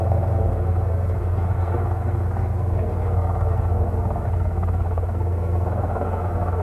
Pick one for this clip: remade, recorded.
remade